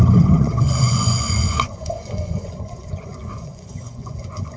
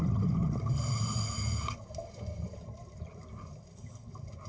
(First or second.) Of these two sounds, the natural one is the second